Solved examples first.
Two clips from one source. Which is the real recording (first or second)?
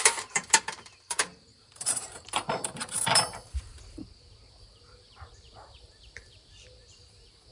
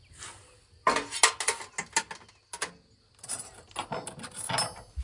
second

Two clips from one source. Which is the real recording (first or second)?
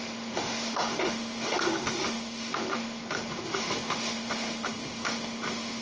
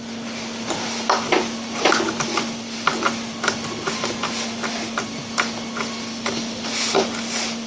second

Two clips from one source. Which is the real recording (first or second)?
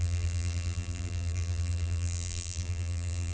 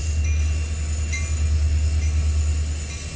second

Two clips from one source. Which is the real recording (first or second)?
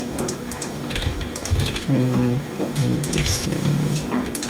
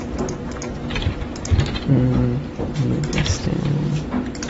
second